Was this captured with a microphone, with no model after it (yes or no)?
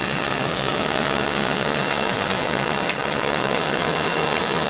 no